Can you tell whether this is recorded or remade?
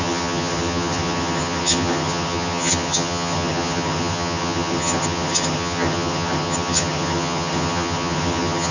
remade